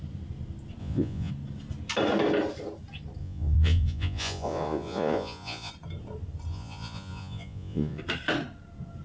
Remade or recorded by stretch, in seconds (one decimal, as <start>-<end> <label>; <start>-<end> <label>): 0.0-0.8 recorded; 0.8-1.3 remade; 1.3-3.2 recorded; 3.2-5.7 remade; 5.7-6.5 recorded; 6.5-8.0 remade; 8.0-9.0 recorded